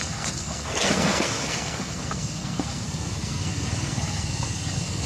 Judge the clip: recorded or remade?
remade